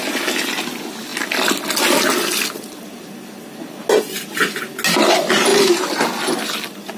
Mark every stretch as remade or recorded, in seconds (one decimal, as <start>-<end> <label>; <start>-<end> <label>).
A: 0.0-7.0 recorded